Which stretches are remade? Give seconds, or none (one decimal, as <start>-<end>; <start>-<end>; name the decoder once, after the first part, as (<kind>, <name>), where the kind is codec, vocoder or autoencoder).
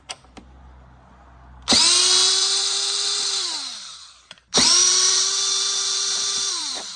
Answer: 0.0-0.4 (vocoder, BigVGAN v2); 2.0-7.0